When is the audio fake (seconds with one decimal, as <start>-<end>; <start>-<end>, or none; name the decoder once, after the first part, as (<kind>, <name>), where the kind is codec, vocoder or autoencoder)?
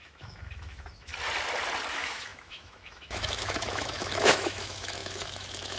0.0-1.1 (autoencoder, DAC-VAE); 1.9-5.8